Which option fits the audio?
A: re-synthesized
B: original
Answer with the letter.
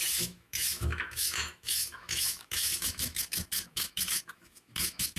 A